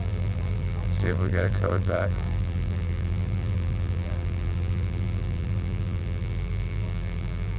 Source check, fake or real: fake